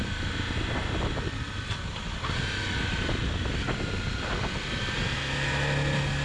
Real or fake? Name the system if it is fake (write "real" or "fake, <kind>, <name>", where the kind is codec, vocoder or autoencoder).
real